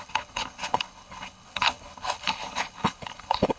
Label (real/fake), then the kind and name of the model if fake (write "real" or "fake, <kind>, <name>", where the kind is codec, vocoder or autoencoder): fake, codec, HILCodec